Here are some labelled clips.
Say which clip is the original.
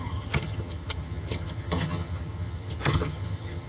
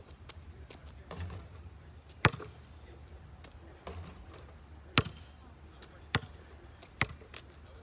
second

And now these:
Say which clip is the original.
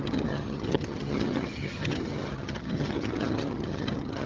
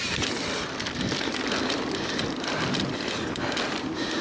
second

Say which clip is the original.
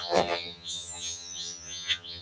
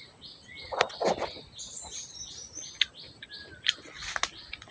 second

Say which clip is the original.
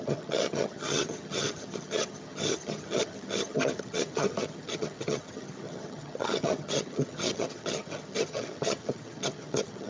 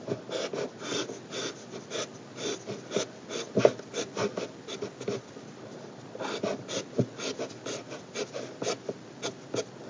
second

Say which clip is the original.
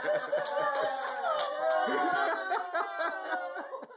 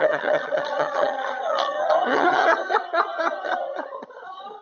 first